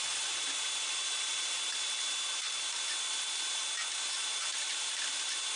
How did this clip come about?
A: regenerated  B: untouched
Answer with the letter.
B